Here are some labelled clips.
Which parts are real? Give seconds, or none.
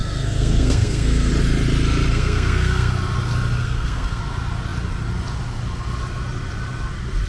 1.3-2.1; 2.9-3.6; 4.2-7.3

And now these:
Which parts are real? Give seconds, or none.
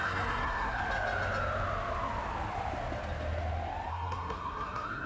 0.8-3.9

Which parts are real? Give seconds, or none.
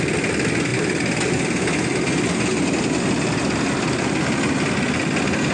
0.0-5.5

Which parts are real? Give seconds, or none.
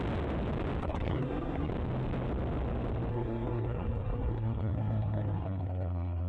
0.0-0.8; 1.7-3.1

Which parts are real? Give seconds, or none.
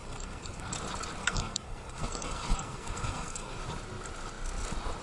0.7-1.2; 3.6-5.0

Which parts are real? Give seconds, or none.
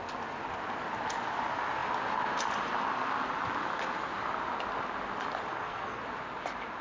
0.0-5.5; 6.0-6.8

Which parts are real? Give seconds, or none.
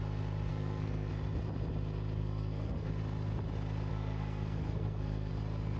0.0-0.5; 1.1-2.2; 2.9-3.9; 5.3-5.8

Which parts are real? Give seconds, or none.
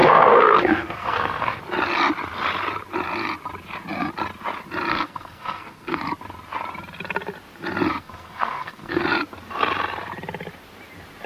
1.6-4.9; 6.0-7.9; 9.0-11.3